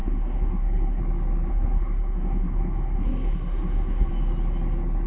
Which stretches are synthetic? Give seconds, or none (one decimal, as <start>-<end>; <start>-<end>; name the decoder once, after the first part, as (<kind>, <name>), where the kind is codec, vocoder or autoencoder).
0.0-1.0 (codec, SNAC); 1.5-4.1

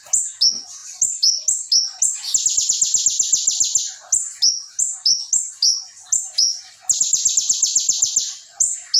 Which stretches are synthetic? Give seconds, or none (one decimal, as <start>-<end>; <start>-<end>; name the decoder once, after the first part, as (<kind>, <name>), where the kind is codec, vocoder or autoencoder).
none

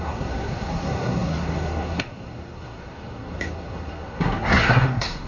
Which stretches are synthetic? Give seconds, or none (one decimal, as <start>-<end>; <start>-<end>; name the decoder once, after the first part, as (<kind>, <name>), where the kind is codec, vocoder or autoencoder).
0.0-5.3 (codec, SNAC)

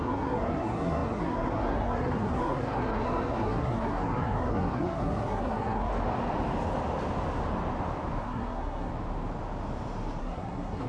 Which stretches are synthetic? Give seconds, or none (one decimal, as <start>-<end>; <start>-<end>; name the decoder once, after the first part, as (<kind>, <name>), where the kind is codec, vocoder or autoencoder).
0.0-5.9 (codec, SNAC); 8.2-8.9; 10.2-10.9

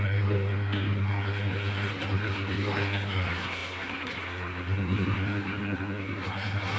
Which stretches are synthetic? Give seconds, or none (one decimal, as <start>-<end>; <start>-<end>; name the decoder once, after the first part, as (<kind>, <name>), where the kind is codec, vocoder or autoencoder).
0.0-6.8 (codec, SNAC)

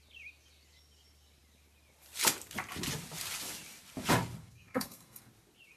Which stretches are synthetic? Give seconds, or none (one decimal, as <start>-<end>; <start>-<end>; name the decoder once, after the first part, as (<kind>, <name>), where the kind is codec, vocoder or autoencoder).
4.4-5.3 (codec, SNAC)

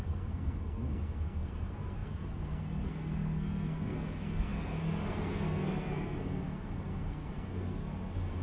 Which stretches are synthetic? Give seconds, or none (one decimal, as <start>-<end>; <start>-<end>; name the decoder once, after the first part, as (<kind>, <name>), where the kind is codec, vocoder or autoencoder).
0.0-8.4 (codec, SNAC)